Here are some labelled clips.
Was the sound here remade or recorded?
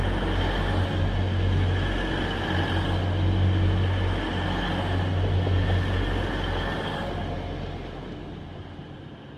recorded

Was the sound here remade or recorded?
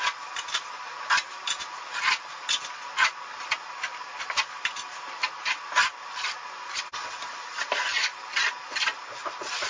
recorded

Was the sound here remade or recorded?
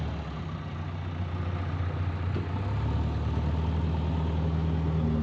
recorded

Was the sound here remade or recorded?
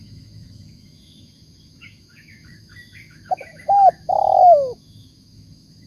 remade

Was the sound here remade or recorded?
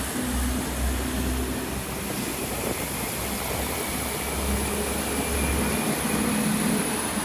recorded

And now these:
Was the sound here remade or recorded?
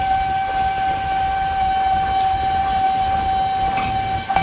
recorded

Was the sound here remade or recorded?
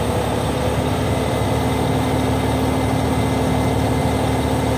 recorded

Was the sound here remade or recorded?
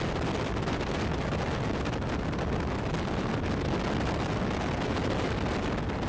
recorded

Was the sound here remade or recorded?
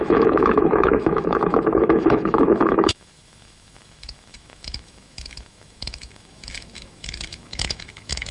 remade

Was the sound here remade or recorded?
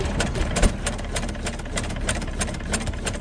remade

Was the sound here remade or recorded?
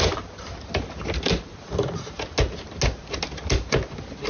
recorded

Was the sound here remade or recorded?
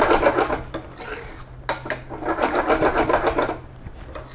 recorded